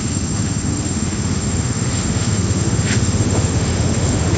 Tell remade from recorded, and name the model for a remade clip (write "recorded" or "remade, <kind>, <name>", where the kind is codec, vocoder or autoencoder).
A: remade, autoencoder, DAC-VAE